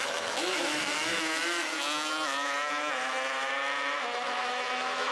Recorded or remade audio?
remade